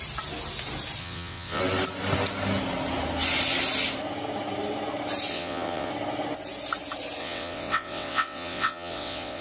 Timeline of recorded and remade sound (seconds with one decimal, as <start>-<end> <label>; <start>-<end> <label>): 0.0-1.0 recorded; 1.0-1.6 remade; 1.6-5.3 recorded; 5.3-5.9 remade; 5.9-7.2 recorded; 7.2-9.4 remade